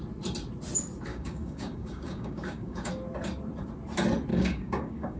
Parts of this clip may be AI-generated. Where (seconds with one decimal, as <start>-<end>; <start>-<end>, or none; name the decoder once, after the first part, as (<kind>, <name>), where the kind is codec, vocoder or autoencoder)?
1.1-2.9 (codec, DAC); 4.3-5.2